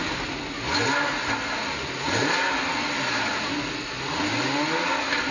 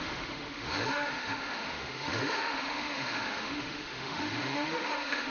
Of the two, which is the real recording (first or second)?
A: first